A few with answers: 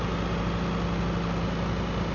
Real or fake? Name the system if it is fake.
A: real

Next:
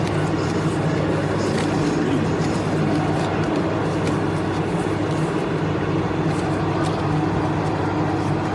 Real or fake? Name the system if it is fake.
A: real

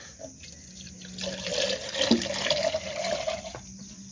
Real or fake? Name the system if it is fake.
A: real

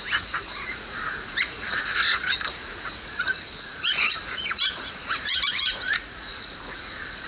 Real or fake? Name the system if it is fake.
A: fake, vocoder, Vocos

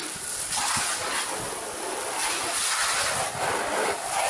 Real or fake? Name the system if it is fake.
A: real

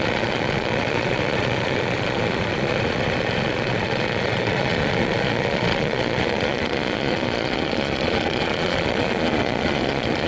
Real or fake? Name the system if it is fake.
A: fake, vocoder, Vocos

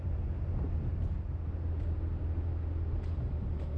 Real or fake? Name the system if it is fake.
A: real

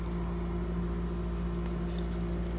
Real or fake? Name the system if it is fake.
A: real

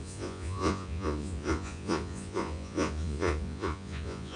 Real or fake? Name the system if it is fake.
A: fake, vocoder, Vocos